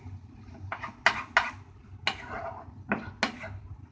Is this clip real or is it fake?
real